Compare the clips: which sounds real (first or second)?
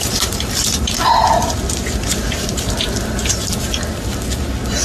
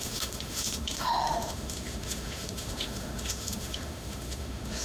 first